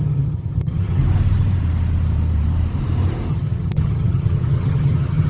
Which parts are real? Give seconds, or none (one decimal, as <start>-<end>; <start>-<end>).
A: 1.0-3.3